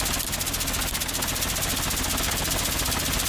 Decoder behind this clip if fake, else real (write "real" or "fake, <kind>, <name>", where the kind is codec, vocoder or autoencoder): real